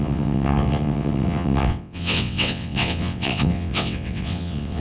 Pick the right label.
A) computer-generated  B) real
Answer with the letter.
A